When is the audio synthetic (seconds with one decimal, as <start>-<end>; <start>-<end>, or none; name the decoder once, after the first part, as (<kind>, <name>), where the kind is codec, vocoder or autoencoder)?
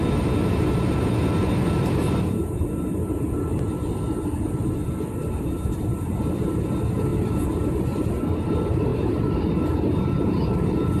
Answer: none